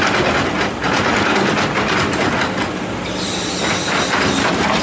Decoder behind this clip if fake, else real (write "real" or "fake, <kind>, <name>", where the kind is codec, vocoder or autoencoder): real